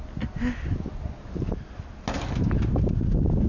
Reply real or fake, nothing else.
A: real